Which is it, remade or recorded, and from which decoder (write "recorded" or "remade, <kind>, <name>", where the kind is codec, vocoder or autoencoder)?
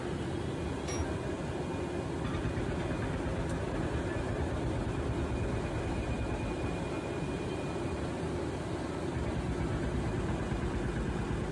recorded